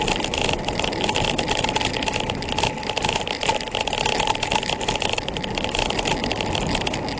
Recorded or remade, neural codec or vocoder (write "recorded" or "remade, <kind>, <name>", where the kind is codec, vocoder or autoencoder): recorded